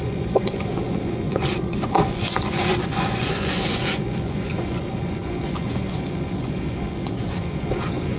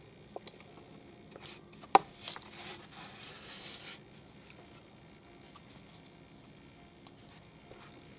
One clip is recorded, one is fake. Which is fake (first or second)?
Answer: first